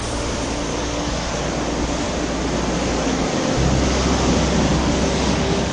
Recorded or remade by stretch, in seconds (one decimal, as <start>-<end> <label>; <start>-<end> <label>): 0.0-0.7 recorded; 0.7-1.3 remade; 1.3-2.8 recorded; 2.8-3.3 remade; 3.3-4.7 recorded; 4.7-5.7 remade